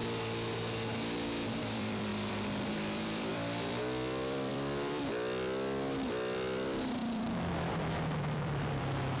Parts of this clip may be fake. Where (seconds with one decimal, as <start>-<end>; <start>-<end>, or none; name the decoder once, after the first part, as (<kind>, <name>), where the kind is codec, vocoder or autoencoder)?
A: 1.5-9.2 (vocoder, BigVGAN v2)